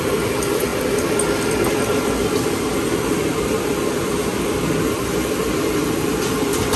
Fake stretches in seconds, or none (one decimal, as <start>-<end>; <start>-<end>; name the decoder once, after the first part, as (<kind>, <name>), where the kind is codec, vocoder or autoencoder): 0.0-0.7 (vocoder, BigVGAN v2); 4.8-6.8